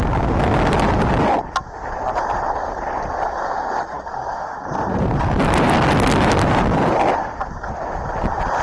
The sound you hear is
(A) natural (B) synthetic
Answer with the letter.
A